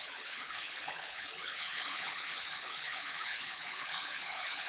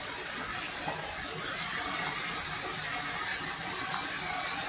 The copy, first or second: first